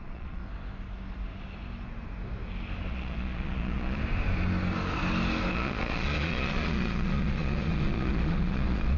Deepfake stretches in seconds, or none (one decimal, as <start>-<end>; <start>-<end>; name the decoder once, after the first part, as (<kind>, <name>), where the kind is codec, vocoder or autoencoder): 0.0-0.4 (vocoder, Vocos); 2.9-4.0; 5.5-9.0